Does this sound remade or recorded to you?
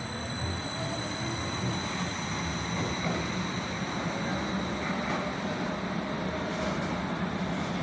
recorded